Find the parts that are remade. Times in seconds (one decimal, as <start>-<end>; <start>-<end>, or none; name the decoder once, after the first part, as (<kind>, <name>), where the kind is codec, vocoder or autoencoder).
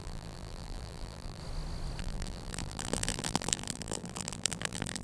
0.0-1.4 (vocoder, BigVGAN v2); 2.0-5.0